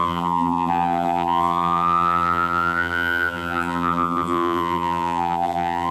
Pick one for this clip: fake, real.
fake